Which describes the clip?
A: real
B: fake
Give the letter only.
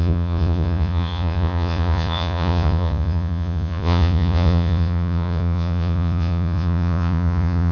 B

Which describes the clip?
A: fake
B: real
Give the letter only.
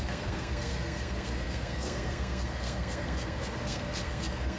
A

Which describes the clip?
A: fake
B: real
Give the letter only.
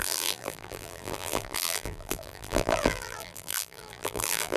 A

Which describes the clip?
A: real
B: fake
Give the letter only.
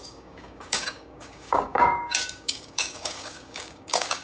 B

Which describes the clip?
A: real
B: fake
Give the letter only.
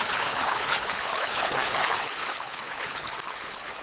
B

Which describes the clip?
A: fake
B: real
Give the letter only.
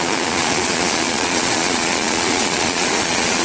A